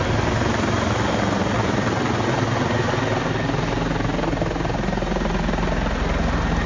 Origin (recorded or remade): recorded